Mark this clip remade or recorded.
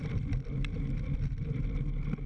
remade